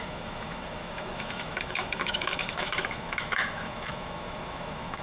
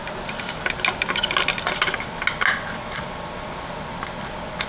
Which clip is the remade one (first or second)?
first